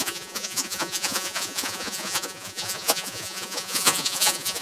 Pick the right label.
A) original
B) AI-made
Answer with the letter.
B